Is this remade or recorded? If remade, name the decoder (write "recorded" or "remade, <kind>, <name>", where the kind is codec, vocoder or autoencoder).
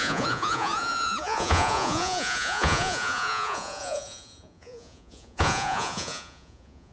remade, vocoder, Vocos